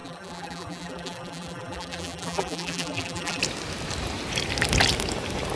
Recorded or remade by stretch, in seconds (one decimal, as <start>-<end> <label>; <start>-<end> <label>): 0.0-3.4 remade; 3.4-5.6 recorded